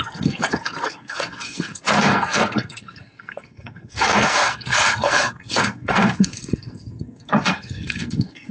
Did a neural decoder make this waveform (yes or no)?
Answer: yes